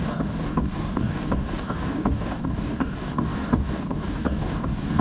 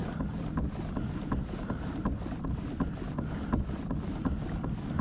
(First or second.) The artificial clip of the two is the first